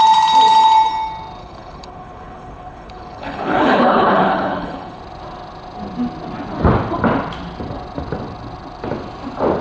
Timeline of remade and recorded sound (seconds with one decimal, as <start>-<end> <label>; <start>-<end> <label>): 0.0-1.4 recorded; 1.4-5.0 remade; 5.0-9.6 recorded